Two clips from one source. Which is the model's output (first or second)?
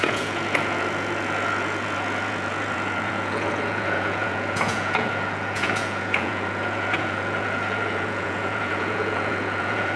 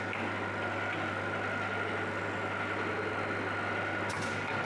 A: first